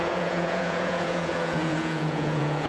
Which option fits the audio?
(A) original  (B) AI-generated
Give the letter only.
B